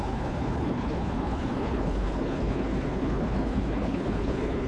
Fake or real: fake